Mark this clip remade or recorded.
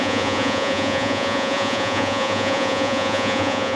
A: remade